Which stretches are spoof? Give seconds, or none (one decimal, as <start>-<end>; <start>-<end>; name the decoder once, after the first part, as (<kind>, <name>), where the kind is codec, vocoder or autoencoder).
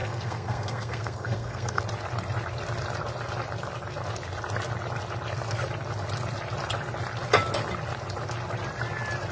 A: 0.0-1.8 (codec, SNAC)